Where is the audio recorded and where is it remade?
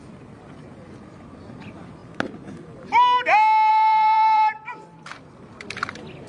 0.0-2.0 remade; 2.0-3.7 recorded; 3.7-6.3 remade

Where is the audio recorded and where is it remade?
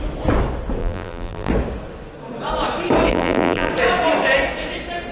0.0-0.8 recorded; 0.8-1.5 remade; 1.5-3.1 recorded; 3.1-3.7 remade; 3.7-5.1 recorded